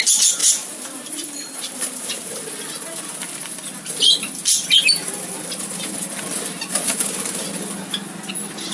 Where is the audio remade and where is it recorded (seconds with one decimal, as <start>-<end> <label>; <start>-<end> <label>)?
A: 0.0-0.4 recorded; 0.4-2.4 remade; 2.4-8.7 recorded